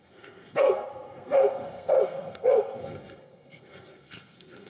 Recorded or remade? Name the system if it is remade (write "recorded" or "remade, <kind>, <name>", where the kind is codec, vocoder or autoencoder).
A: remade, codec, SNAC